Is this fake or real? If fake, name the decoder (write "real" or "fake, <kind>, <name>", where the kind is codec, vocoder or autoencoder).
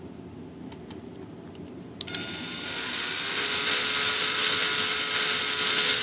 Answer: real